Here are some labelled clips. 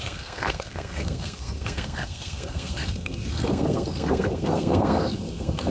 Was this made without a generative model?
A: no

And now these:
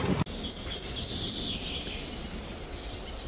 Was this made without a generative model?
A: yes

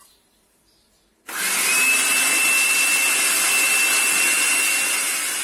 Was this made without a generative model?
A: yes